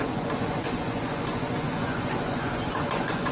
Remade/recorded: remade